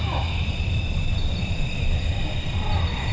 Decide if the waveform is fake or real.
real